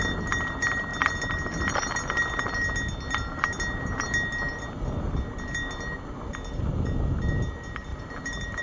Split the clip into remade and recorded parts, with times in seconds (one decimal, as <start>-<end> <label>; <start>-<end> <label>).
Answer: 0.0-7.9 recorded; 7.9-8.6 remade